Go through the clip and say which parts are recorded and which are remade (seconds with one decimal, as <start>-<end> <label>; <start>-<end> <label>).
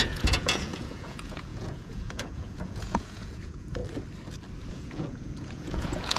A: 0.0-3.8 remade; 3.8-4.7 recorded; 4.7-6.2 remade